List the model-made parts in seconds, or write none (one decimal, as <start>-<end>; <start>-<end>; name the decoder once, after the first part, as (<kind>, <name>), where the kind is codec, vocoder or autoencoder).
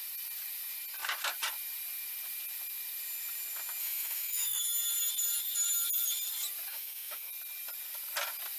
3.8-4.6 (autoencoder, DAC-VAE); 6.7-7.3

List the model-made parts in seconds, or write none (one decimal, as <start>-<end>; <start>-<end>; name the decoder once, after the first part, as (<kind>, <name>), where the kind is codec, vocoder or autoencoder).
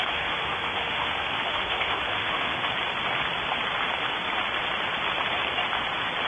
0.0-2.7 (autoencoder, DAC-VAE)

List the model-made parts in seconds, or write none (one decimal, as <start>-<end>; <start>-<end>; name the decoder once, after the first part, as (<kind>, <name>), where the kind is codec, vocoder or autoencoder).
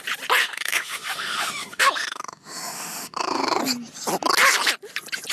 0.4-3.6 (autoencoder, DAC-VAE)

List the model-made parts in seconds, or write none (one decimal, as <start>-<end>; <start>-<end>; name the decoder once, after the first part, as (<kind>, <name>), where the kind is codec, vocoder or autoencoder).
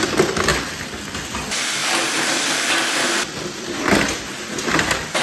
none